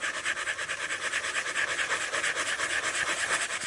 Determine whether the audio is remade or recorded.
recorded